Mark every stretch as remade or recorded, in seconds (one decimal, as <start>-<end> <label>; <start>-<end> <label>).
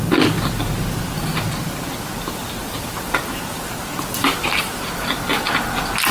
0.0-2.6 recorded; 2.6-3.7 remade; 3.7-4.2 recorded; 4.2-4.8 remade; 4.8-6.1 recorded